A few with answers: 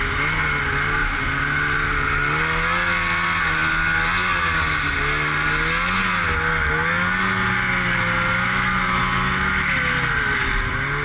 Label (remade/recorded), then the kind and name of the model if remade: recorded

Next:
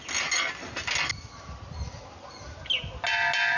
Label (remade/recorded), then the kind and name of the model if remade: recorded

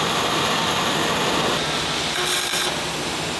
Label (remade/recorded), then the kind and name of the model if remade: recorded